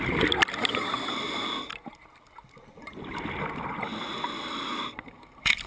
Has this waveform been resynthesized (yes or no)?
no